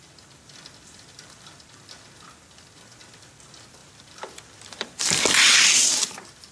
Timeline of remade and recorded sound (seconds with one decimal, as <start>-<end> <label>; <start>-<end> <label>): 0.0-3.8 recorded; 3.8-5.2 remade; 5.2-6.5 recorded